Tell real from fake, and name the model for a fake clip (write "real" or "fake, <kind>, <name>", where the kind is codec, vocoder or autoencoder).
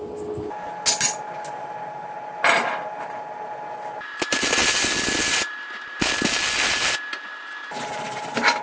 real